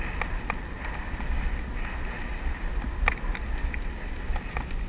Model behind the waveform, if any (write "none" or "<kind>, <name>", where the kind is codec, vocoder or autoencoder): none